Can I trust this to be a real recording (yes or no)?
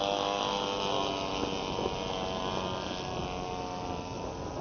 yes